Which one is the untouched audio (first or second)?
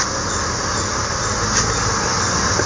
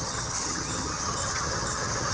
first